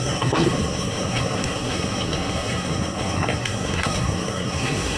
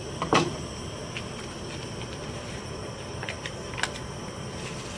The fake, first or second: first